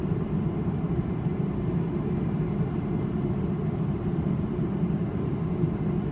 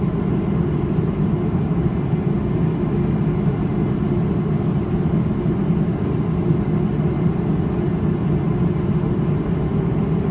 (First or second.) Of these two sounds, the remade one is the first